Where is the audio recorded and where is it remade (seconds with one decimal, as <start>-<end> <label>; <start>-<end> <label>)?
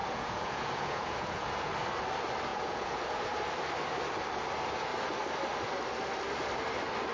0.0-1.7 remade; 1.7-2.5 recorded; 2.5-3.3 remade; 3.3-7.1 recorded